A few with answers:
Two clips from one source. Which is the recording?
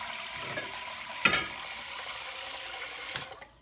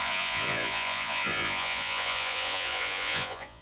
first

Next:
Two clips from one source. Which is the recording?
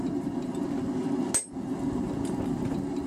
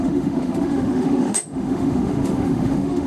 first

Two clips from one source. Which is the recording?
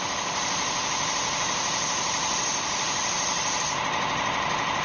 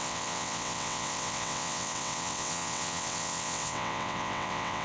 first